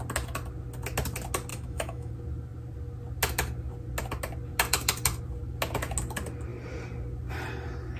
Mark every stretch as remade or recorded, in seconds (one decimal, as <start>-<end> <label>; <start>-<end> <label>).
0.0-1.5 recorded; 1.5-2.1 remade; 2.1-8.0 recorded